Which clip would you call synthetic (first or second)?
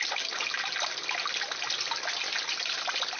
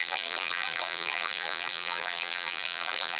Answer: second